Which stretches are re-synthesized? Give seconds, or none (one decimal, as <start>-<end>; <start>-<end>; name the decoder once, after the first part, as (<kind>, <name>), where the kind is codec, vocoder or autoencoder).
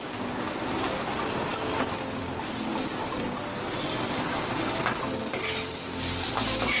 3.0-5.2 (vocoder, BigVGAN v2)